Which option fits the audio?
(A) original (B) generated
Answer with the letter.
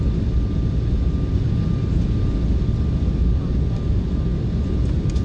A